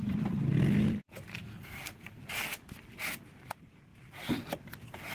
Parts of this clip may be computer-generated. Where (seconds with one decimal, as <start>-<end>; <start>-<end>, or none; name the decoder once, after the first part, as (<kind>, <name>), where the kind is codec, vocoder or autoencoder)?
1.3-2.2 (codec, SNAC)